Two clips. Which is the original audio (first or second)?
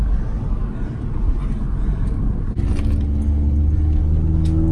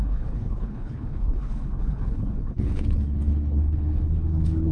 first